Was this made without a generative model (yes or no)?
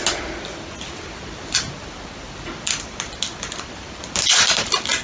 yes